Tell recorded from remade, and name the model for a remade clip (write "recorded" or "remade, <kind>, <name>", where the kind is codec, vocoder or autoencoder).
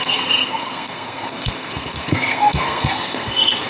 remade, codec, SNAC